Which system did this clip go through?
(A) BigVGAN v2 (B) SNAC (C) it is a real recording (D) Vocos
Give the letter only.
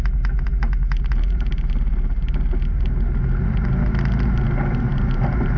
C